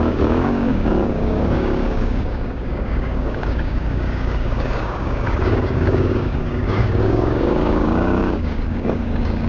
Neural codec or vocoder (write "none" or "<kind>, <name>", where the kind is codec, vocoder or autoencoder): codec, DAC